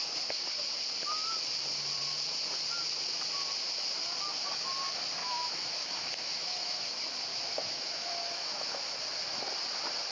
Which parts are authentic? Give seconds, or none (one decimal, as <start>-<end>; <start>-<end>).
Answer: 0.0-5.2; 6.8-7.3; 9.0-10.1